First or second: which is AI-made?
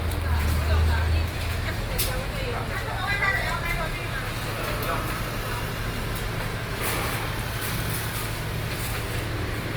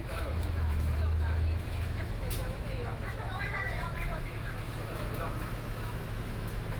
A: second